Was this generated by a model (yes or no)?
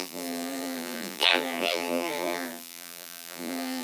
yes